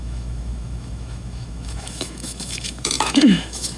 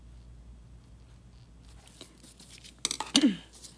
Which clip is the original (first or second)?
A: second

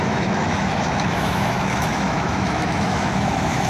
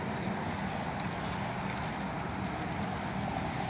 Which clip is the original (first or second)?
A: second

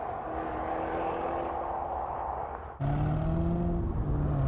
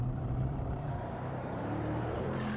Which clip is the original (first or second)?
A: first